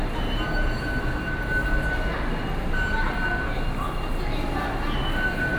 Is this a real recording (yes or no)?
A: yes